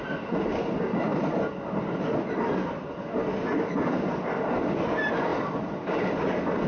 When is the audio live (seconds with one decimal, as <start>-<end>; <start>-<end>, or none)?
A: 0.0-6.7